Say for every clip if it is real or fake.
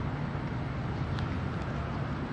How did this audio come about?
real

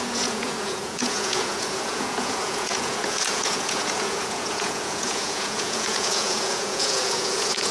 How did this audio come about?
fake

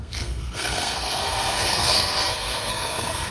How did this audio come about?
fake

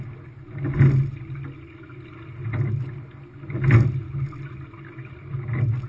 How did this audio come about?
real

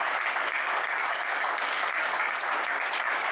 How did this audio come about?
fake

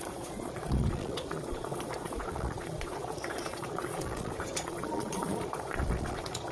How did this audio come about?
fake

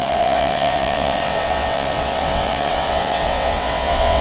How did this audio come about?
fake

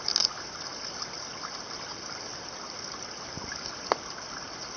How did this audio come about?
real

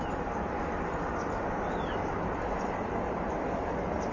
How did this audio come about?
real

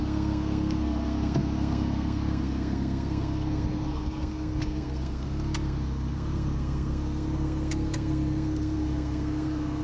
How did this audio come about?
fake